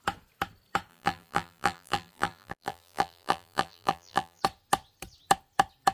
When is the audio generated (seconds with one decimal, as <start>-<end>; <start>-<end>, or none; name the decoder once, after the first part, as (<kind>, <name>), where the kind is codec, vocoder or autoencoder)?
0.9-4.4 (vocoder, BigVGAN v2)